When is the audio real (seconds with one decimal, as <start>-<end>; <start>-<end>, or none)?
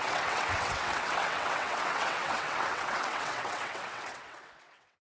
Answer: none